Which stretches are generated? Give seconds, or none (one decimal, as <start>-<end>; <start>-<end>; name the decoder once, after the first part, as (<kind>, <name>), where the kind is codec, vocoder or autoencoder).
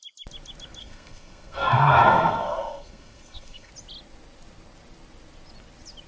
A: 0.8-3.7 (codec, SNAC)